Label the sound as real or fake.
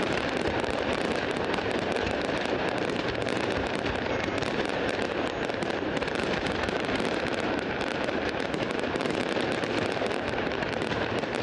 fake